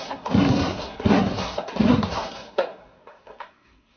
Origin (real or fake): fake